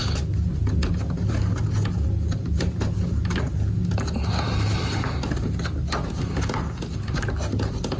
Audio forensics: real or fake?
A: real